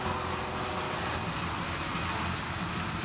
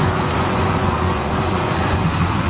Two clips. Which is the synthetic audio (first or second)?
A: second